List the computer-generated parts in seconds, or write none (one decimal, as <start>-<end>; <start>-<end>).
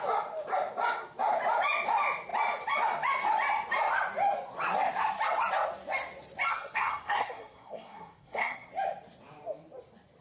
6.5-8.7